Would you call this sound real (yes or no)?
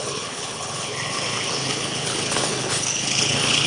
no